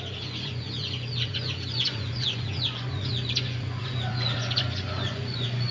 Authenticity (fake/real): fake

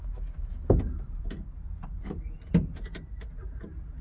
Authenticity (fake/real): real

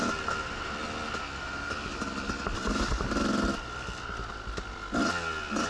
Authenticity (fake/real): real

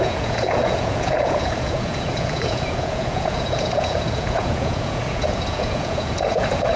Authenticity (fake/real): fake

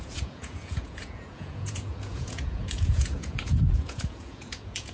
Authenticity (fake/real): fake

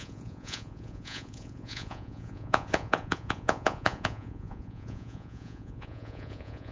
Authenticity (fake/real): fake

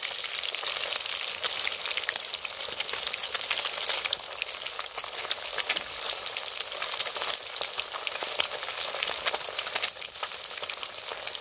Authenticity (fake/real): real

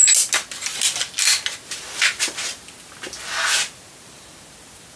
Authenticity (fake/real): real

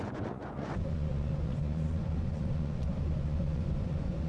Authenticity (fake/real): fake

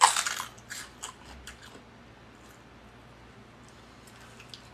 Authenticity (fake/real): real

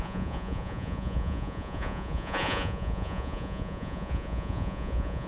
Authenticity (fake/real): fake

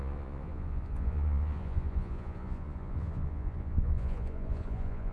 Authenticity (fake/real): fake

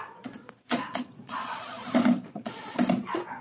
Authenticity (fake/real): fake